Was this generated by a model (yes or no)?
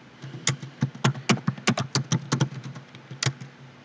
no